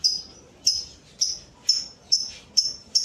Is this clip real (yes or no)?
no